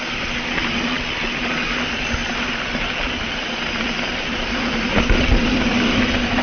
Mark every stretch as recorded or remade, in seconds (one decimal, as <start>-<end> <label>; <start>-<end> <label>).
0.0-2.2 recorded; 2.2-6.0 remade; 6.0-6.4 recorded